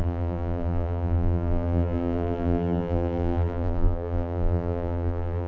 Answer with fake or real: fake